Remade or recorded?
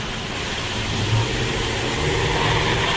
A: recorded